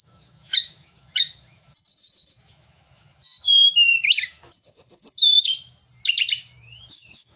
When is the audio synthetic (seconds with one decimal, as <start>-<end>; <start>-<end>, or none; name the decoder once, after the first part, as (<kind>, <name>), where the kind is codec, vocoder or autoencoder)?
0.0-5.8 (autoencoder, DAC-VAE); 6.8-7.4